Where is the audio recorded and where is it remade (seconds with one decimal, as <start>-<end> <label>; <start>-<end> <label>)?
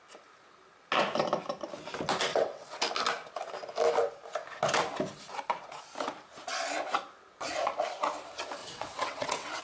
0.0-2.3 recorded; 2.3-2.8 remade; 2.8-8.6 recorded; 8.6-9.6 remade